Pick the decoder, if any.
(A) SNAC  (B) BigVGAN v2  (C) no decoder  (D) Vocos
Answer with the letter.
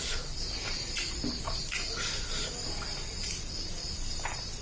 C